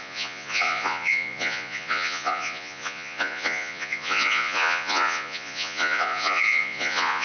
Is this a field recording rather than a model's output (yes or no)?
no